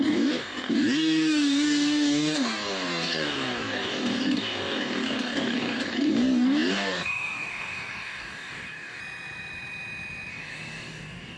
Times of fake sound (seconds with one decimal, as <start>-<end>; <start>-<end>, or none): 0.0-9.0; 10.3-11.4